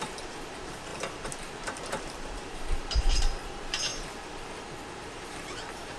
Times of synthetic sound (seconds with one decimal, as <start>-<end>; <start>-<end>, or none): 0.0-3.9; 4.9-6.0